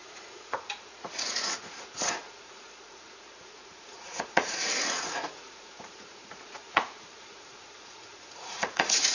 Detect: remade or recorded remade